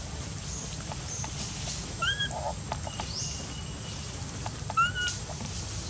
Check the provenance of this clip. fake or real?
real